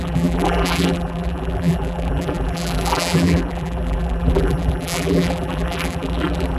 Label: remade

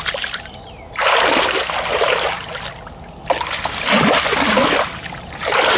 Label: recorded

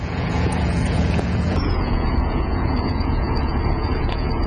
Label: remade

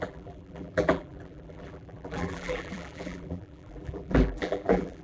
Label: remade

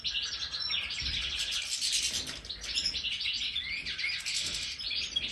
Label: recorded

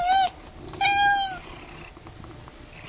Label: recorded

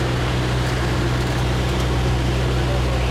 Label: recorded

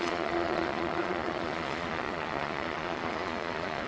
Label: remade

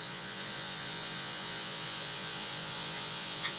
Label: remade